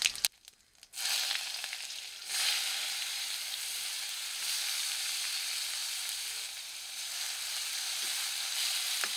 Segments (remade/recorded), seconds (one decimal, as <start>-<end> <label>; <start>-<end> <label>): 0.0-3.9 recorded; 3.9-5.2 remade; 5.2-5.8 recorded; 5.8-6.3 remade; 6.3-9.2 recorded